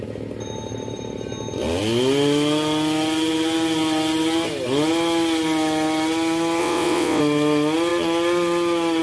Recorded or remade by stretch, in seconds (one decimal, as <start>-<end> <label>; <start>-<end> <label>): 0.0-6.6 recorded; 6.6-7.2 remade; 7.2-9.0 recorded